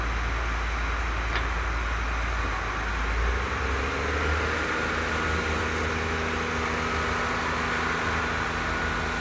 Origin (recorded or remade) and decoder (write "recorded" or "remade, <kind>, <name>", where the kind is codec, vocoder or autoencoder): recorded